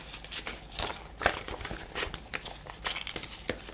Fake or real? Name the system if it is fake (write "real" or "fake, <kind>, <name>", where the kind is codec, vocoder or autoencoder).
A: real